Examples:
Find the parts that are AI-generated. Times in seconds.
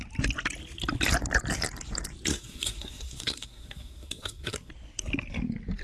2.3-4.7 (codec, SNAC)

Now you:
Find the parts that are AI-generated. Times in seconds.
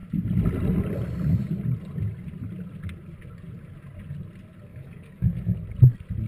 4.7-5.5 (codec, DAC)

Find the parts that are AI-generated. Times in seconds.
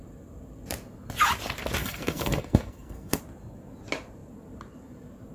1.8-3.2 (codec, SNAC)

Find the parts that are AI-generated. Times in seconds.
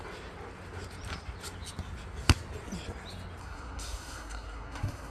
3.4-5.1 (codec, SNAC)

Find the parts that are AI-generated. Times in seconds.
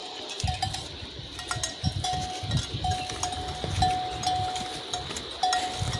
0.0-1.2 (vocoder, BigVGAN v2)